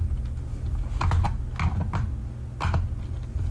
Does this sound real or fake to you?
real